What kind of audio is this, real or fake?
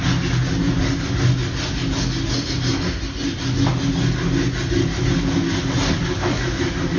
real